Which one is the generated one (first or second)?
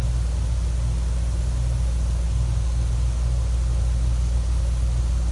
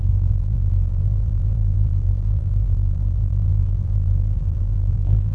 second